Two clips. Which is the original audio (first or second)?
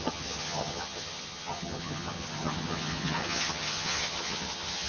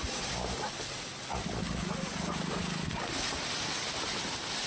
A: second